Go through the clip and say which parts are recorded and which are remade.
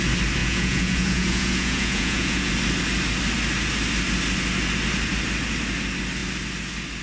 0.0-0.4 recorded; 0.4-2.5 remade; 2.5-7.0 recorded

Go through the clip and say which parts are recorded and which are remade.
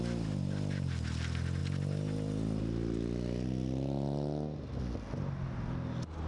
0.0-6.3 recorded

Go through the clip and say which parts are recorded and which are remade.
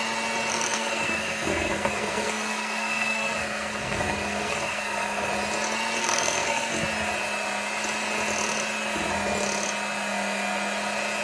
0.0-0.5 recorded; 0.5-5.3 remade; 5.3-6.0 recorded; 6.0-6.7 remade; 6.7-11.2 recorded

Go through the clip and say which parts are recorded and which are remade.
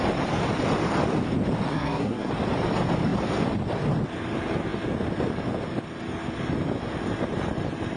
0.0-1.7 recorded; 1.7-2.3 remade; 2.3-8.0 recorded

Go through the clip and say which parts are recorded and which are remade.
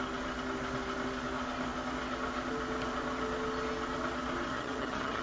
0.0-4.5 recorded; 4.5-5.2 remade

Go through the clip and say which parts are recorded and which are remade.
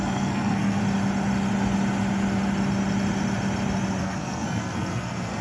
0.0-0.8 remade; 0.8-4.0 recorded; 4.0-5.4 remade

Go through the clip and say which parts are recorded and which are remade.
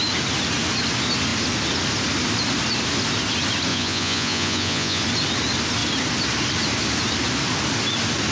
0.0-3.7 recorded; 3.7-5.0 remade; 5.0-8.3 recorded